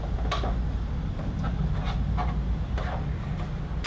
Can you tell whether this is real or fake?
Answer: real